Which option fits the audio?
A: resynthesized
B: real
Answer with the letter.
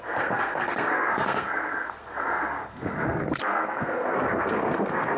A